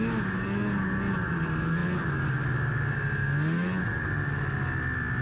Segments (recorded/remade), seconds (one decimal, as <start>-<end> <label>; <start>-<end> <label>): 0.0-5.2 recorded